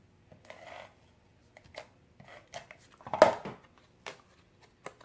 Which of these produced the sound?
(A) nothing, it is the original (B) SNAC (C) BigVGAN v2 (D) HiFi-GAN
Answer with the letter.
A